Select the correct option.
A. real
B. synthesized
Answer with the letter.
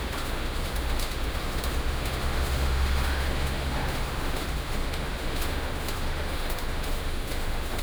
B